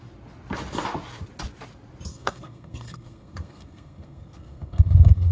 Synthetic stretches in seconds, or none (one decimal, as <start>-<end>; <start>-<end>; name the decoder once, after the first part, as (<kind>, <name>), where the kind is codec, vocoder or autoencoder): 2.1-5.3 (codec, SNAC)